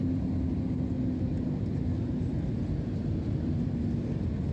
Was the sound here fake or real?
real